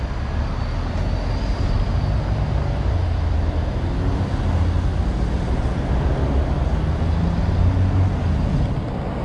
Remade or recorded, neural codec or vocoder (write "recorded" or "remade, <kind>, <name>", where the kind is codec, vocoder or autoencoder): recorded